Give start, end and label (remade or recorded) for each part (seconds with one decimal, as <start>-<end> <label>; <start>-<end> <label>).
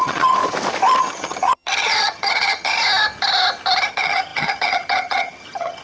0.0-0.4 remade; 0.4-1.0 recorded; 1.0-2.7 remade; 2.7-3.9 recorded; 3.9-5.8 remade